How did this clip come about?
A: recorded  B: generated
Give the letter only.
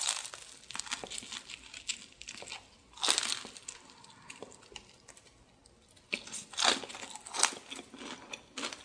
A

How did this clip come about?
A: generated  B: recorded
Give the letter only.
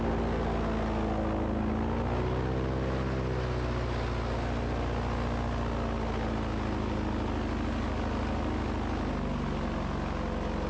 B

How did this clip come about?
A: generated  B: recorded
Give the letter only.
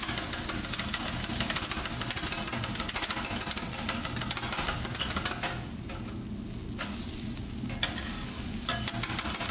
B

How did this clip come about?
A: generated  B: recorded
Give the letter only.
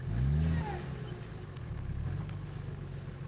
B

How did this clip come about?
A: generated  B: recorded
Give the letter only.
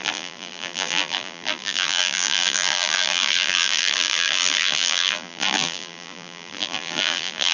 A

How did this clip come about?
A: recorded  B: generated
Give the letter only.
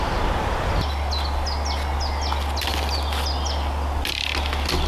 A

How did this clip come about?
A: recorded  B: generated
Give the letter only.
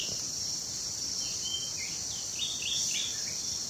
A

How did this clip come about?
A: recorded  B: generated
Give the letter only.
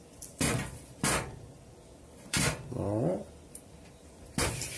B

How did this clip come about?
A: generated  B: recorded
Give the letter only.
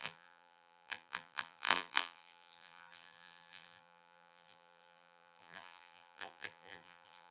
A